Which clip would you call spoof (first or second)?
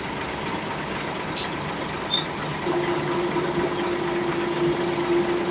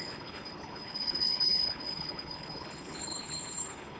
second